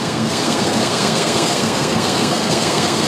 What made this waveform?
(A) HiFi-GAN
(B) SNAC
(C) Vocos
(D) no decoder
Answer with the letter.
B